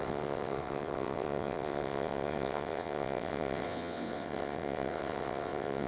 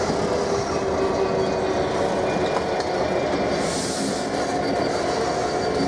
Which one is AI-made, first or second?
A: first